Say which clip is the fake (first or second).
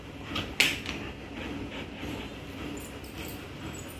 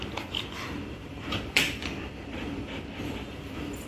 second